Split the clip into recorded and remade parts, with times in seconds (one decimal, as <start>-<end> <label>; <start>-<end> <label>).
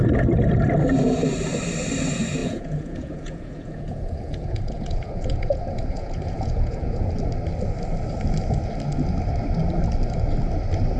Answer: 0.0-2.4 recorded; 2.4-7.1 remade; 7.1-11.0 recorded